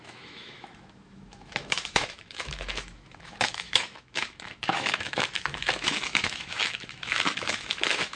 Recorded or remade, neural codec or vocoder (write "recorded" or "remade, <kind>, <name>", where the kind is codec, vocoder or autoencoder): remade, autoencoder, DAC-VAE